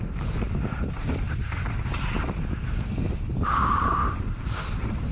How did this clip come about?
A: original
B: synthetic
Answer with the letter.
B